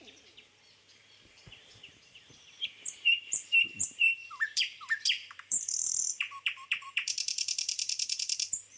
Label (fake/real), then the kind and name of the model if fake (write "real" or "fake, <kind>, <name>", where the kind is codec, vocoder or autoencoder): fake, vocoder, BigVGAN v2